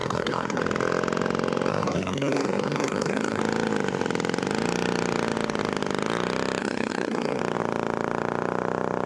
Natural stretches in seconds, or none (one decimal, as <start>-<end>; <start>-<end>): 0.6-1.7; 3.4-6.6; 7.4-9.1